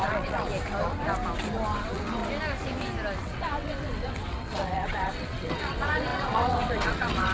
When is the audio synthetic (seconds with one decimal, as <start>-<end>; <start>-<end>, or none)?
0.0-0.5; 1.8-2.2; 3.2-7.3